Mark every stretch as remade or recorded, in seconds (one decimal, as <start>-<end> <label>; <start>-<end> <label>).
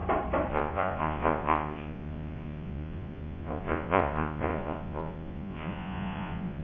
0.0-0.5 recorded; 0.5-6.6 remade